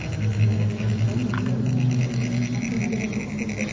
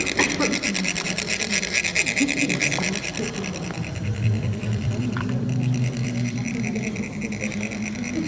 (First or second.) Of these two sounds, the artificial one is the second